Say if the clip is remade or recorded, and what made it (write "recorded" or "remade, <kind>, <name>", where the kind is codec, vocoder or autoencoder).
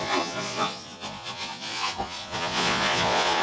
remade, vocoder, Vocos